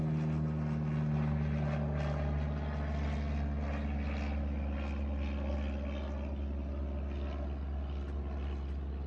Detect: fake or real real